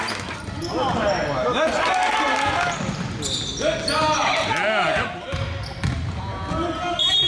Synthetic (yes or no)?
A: no